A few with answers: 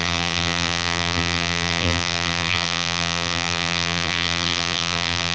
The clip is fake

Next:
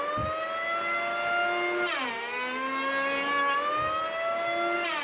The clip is real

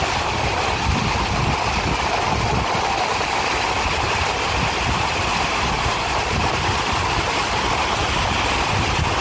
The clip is real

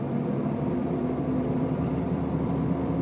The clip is fake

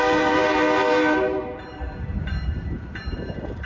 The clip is fake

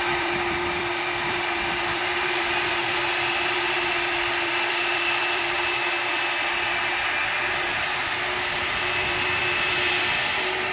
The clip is fake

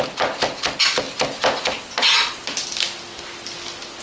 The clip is real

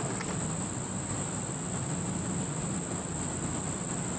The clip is real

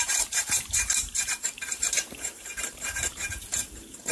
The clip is fake